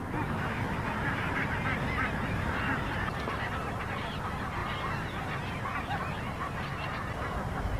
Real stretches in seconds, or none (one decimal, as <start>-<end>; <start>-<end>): 0.0-7.8